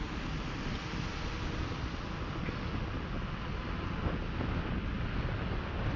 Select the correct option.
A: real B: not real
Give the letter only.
A